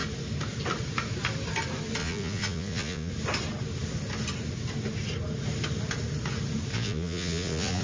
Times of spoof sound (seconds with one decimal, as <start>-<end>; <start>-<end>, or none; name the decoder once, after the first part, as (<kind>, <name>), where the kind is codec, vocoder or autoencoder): 2.0-3.1 (vocoder, Vocos); 6.7-7.8